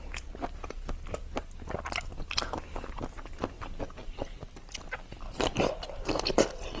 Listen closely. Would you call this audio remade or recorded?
recorded